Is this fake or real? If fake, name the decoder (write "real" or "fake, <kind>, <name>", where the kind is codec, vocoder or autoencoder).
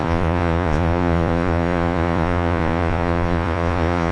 fake, vocoder, Vocos